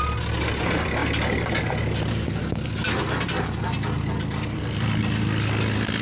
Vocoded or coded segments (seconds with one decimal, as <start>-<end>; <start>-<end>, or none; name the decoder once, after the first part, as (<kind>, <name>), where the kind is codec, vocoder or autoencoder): none